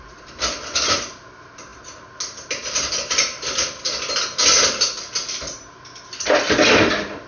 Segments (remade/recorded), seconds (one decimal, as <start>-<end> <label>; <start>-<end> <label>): 0.0-7.3 recorded